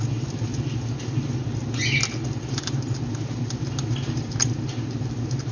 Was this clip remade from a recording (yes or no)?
no